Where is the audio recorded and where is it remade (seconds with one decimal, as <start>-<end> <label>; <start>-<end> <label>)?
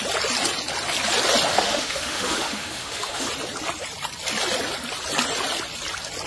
0.0-1.5 recorded; 1.5-3.3 remade; 3.3-6.3 recorded